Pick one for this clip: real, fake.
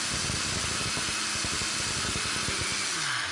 real